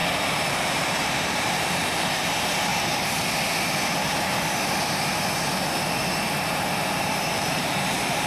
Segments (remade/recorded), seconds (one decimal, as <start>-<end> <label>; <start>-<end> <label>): 0.0-0.5 recorded; 0.5-2.7 remade; 2.7-6.9 recorded; 6.9-8.3 remade